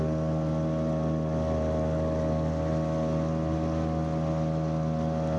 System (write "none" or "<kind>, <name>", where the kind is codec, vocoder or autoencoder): none